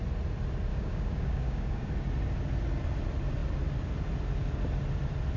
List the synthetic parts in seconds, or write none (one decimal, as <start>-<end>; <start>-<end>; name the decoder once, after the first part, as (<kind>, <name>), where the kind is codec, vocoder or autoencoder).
0.7-1.9 (codec, DAC)

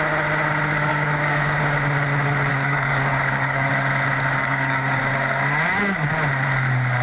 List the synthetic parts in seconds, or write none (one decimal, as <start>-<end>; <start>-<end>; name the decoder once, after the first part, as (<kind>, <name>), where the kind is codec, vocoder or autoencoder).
0.9-1.6 (codec, DAC); 2.5-3.7; 4.4-5.0

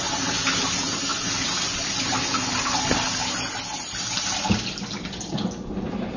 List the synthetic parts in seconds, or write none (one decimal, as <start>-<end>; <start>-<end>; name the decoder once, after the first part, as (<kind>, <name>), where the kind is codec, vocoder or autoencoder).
none